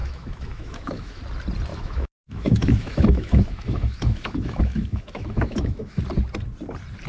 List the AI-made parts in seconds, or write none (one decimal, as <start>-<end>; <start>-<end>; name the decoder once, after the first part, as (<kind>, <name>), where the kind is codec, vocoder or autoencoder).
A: 0.0-1.2 (autoencoder, DAC-VAE); 1.7-6.0